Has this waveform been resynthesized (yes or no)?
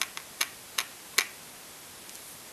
no